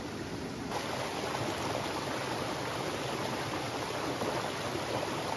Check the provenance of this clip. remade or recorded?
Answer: recorded